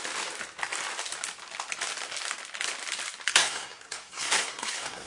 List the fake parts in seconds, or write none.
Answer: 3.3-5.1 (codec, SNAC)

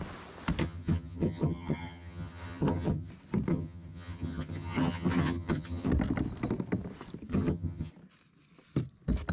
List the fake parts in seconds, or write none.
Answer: 0.6-3.1 (vocoder, HiFi-GAN); 3.5-5.9; 7.3-7.9

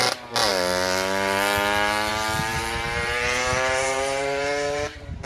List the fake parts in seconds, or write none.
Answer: 2.5-5.3 (vocoder, BigVGAN v2)

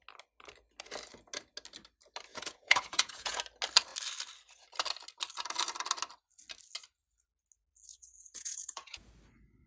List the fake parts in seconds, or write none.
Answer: 2.3-3.4 (vocoder, Vocos); 7.9-9.1